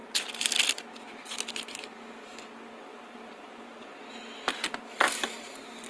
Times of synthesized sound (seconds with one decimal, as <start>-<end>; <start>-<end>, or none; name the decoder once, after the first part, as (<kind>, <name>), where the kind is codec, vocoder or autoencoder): 2.9-4.0 (vocoder, BigVGAN v2)